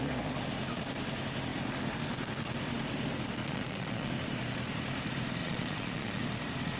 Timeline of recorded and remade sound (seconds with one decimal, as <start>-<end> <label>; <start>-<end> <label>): 0.0-3.4 recorded; 3.4-4.1 remade; 4.1-5.4 recorded; 5.4-6.2 remade; 6.2-6.8 recorded